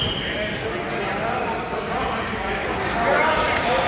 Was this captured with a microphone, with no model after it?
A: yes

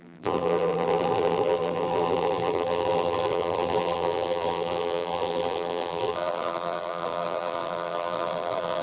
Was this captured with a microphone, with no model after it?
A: no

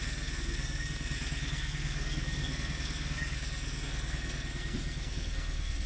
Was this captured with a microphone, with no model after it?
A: no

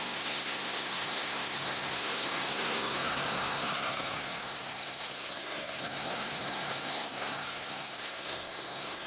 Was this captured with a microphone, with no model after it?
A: no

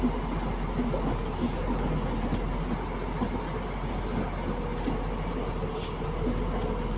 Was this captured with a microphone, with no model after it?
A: yes